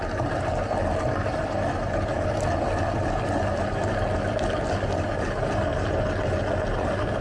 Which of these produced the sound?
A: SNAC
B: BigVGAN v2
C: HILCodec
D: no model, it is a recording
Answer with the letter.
D